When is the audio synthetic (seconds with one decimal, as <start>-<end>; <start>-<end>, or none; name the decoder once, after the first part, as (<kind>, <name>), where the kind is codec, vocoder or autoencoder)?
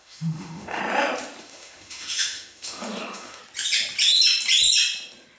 0.0-0.8 (autoencoder, DAC-VAE); 1.4-3.4